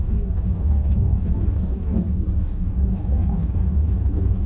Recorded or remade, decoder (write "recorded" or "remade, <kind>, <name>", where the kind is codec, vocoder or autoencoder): remade, codec, DAC